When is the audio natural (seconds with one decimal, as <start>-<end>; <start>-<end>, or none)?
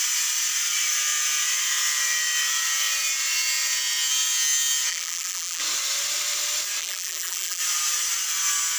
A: 0.0-4.9; 5.6-6.8; 7.6-8.8